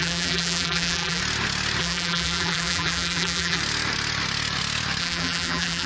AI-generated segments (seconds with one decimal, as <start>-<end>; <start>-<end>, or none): 0.0-1.2; 1.8-3.6; 5.0-5.9